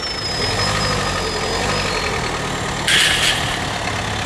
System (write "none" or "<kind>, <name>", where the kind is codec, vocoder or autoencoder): none